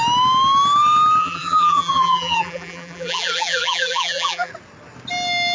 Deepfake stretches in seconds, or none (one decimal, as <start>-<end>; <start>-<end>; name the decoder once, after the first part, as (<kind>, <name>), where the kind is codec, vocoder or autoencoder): 1.2-4.5 (vocoder, BigVGAN v2)